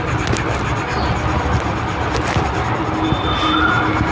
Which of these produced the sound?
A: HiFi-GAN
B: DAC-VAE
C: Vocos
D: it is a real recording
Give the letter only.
D